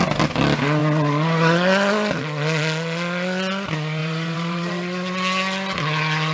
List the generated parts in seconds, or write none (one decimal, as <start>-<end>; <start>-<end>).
4.0-4.7

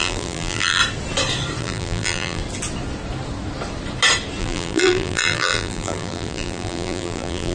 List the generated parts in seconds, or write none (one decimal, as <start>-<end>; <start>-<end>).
0.0-0.8; 1.6-2.4; 4.4-7.5

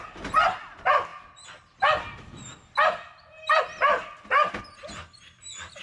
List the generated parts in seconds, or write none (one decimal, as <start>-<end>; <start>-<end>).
none

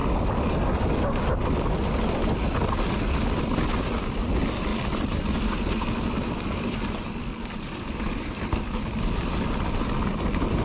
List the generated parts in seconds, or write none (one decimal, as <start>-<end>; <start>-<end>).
7.3-9.3

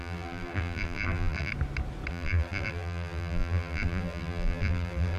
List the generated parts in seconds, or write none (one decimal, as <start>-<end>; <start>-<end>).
0.0-1.5; 2.1-5.2

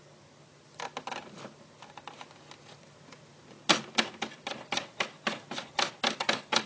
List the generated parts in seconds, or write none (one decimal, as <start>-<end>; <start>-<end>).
none